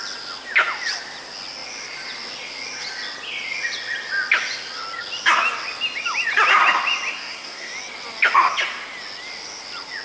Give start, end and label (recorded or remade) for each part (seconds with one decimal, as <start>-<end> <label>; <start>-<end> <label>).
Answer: 0.0-7.1 recorded; 7.1-7.7 remade; 7.7-10.0 recorded